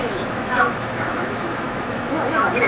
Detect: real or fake fake